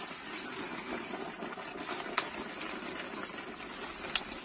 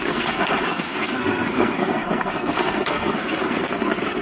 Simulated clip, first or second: second